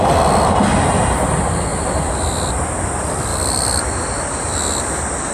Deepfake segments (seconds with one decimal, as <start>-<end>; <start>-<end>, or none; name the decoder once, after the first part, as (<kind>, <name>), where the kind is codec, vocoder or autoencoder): none